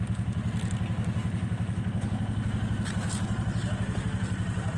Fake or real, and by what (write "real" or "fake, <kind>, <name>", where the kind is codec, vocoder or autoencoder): real